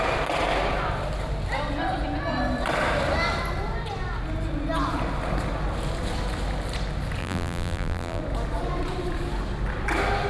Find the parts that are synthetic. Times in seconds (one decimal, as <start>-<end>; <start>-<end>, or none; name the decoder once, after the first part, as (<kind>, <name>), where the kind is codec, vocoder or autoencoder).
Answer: 7.2-8.2 (vocoder, BigVGAN v2)